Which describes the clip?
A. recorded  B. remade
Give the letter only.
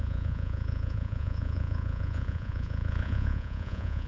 B